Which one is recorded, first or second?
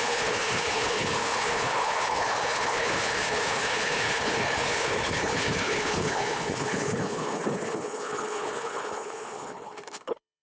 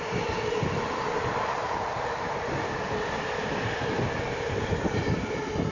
second